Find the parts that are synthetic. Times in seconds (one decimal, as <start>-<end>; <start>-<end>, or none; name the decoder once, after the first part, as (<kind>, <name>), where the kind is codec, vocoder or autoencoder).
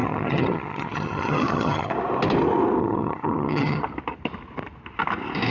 0.0-1.9 (vocoder, HiFi-GAN); 2.8-3.8